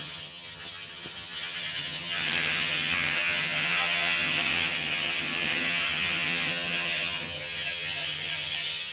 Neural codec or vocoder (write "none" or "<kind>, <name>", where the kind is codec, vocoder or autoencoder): vocoder, HiFi-GAN